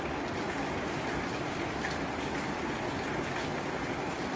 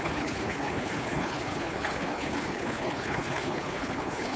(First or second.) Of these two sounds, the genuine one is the first